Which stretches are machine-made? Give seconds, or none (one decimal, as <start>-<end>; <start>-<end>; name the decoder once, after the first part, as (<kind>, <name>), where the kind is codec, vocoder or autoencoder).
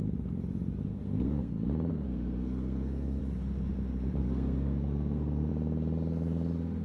0.9-1.5 (codec, SNAC); 1.9-3.2; 4.2-5.5